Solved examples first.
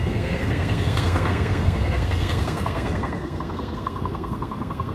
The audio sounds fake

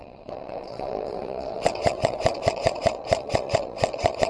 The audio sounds fake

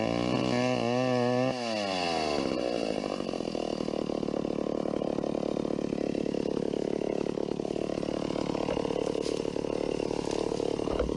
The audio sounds real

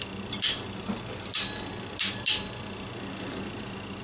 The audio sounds real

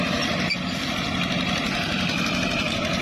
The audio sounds real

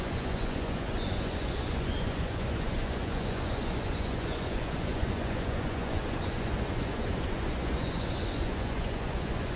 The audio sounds fake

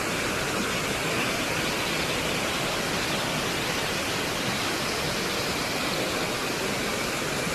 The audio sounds real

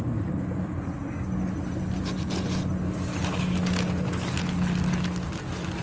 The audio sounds real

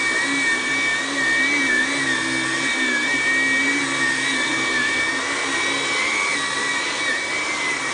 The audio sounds real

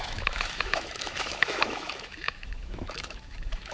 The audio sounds fake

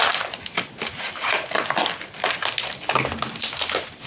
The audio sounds real